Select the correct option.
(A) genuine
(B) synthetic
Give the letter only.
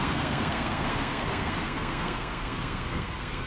B